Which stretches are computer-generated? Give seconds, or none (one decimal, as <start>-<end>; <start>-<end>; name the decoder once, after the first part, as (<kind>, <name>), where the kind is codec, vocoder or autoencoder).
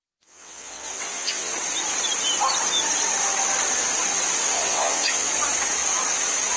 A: 0.0-1.5 (vocoder, WaveNeXt); 4.4-5.3